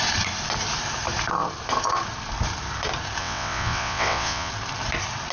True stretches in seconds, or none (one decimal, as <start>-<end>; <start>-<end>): 0.0-3.2; 4.5-5.3

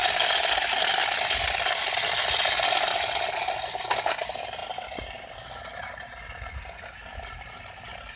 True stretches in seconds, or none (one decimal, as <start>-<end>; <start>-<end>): 0.0-8.2

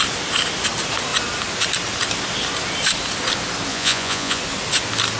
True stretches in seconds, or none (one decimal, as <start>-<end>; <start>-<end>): 0.0-3.7; 4.4-5.2

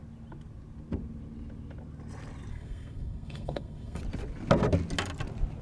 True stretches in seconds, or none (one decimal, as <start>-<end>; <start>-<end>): 0.0-2.5; 4.0-5.6

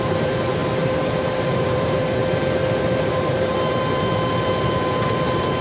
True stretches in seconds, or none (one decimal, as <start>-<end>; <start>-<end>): 2.2-3.1

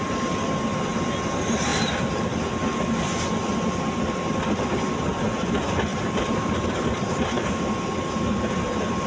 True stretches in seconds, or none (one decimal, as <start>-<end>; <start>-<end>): 0.0-5.9; 7.5-9.1

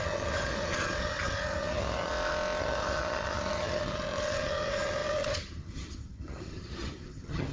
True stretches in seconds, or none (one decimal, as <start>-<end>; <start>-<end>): 2.1-2.6

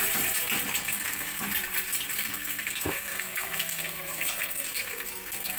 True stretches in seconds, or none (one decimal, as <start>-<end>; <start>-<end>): 0.0-0.8; 1.4-2.2